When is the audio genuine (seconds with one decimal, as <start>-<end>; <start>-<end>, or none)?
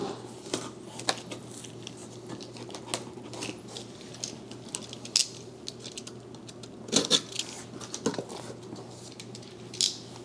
0.0-10.2